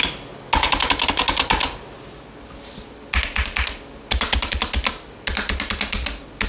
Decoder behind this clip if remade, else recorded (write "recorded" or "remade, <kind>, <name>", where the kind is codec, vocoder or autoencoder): recorded